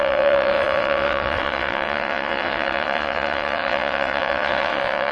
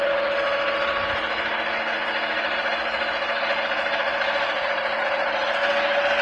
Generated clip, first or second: first